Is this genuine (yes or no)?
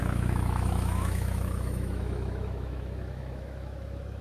no